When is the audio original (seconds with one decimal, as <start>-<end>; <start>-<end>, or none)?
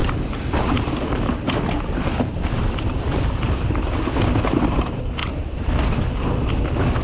4.2-5.2; 6.2-7.0